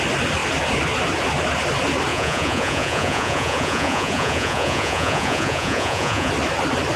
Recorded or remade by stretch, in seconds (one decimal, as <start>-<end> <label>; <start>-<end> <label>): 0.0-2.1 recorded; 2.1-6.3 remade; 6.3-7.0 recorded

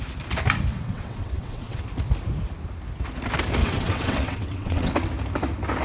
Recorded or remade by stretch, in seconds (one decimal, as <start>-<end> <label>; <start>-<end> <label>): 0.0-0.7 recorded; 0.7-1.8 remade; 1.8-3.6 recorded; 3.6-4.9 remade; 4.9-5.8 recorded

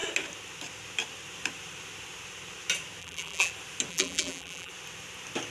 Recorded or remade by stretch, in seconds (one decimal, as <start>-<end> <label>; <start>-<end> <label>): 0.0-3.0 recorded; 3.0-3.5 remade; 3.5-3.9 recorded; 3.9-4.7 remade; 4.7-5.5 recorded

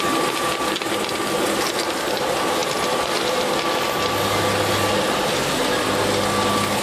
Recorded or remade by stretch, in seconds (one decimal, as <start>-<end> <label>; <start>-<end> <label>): 0.0-6.8 recorded

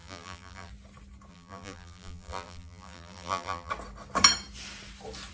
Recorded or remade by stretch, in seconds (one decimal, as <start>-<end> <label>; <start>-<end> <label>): 0.0-0.7 remade; 0.7-1.3 recorded; 1.3-3.7 remade; 3.7-5.3 recorded

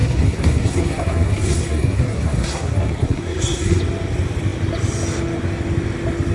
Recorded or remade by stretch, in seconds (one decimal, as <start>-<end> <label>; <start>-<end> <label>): 0.0-3.8 remade; 3.8-6.3 recorded

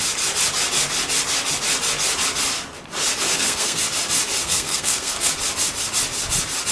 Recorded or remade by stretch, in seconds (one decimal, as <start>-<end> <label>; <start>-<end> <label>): 0.0-3.3 recorded; 3.3-3.8 remade; 3.8-4.4 recorded; 4.4-5.3 remade; 5.3-6.7 recorded

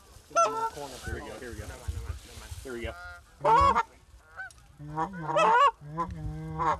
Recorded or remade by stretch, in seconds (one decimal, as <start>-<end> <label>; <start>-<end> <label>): 0.0-6.8 recorded